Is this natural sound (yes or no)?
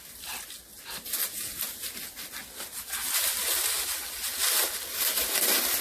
yes